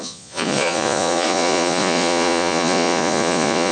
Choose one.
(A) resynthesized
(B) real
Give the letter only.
A